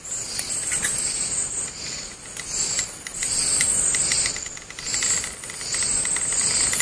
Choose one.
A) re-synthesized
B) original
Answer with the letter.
B